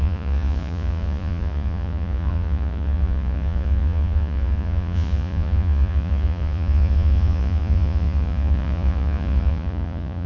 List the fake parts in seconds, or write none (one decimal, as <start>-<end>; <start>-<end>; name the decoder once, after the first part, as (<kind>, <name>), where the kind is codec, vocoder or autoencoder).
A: 0.0-10.3 (vocoder, Vocos)